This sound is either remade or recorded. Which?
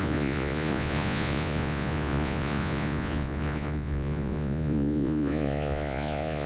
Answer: remade